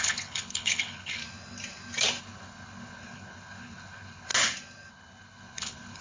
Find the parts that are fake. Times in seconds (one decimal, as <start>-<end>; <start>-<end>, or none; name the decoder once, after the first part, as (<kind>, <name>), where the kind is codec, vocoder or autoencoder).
0.0-1.2 (codec, HILCodec); 2.2-4.3; 4.9-6.0